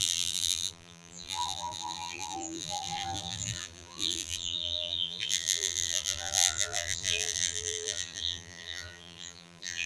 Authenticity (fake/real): fake